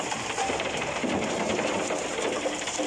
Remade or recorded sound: remade